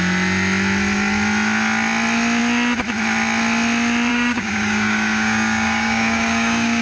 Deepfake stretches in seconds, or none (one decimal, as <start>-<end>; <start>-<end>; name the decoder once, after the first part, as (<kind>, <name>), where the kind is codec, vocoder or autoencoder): 4.1-6.8 (codec, DAC)